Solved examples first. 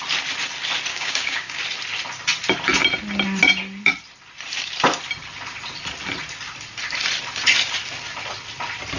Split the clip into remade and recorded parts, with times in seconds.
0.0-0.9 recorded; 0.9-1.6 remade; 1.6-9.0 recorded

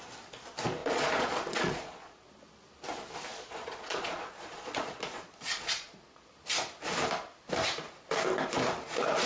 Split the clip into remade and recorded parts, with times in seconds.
0.0-0.8 recorded; 0.8-2.3 remade; 2.3-3.3 recorded; 3.3-6.3 remade; 6.3-9.3 recorded

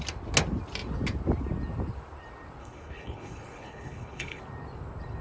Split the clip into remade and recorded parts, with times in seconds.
0.0-2.6 recorded; 2.6-4.4 remade; 4.4-5.2 recorded

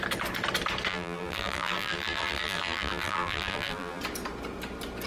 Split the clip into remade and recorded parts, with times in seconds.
0.0-0.9 recorded; 0.9-4.0 remade; 4.0-5.1 recorded